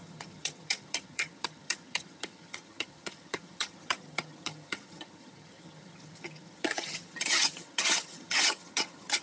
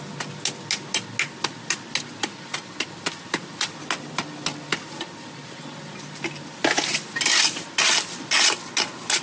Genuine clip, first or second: second